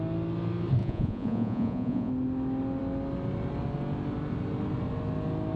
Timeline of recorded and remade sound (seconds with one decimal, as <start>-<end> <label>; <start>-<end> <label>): 0.0-0.8 recorded; 0.8-2.1 remade; 2.1-5.6 recorded